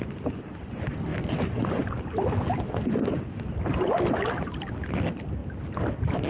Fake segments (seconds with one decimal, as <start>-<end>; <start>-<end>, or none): none